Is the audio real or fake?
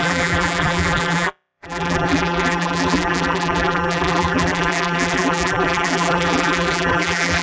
fake